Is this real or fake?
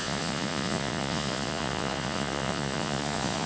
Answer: fake